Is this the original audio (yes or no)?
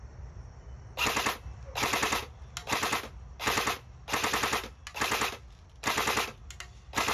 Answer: yes